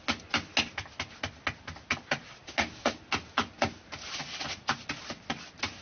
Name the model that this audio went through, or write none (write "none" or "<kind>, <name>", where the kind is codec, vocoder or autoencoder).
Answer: none